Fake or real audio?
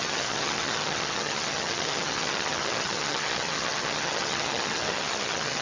fake